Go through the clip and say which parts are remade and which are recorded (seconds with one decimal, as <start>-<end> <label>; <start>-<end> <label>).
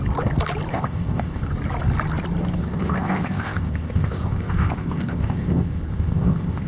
0.0-0.7 recorded; 0.7-1.4 remade; 1.4-2.6 recorded; 2.6-6.7 remade